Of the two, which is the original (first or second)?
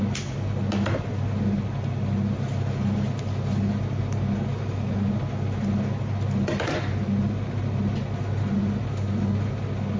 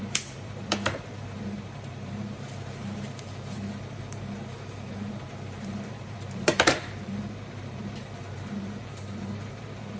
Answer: first